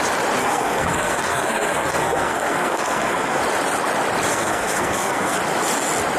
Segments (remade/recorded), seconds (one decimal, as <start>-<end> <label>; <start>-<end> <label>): 0.0-0.4 recorded; 0.4-3.4 remade; 3.4-4.3 recorded; 4.3-5.4 remade; 5.4-6.2 recorded